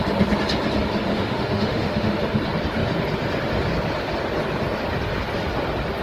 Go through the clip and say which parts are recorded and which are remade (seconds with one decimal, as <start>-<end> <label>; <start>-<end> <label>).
0.0-1.1 recorded; 1.1-2.2 remade; 2.2-6.0 recorded